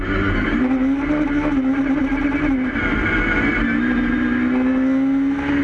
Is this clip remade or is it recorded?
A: recorded